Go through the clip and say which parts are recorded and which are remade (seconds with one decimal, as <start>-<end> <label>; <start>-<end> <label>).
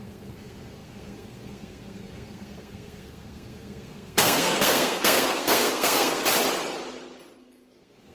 0.0-6.2 remade; 6.2-7.4 recorded; 7.4-8.1 remade